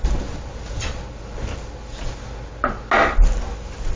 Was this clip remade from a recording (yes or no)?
no